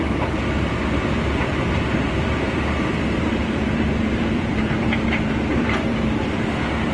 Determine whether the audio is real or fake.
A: fake